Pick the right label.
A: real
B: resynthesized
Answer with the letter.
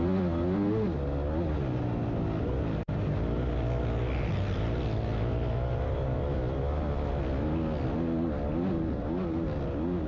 A